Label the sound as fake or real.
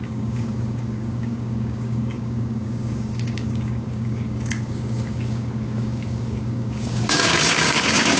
fake